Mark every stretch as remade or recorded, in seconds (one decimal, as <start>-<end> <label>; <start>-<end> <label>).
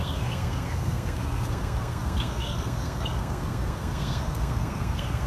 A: 0.0-5.3 remade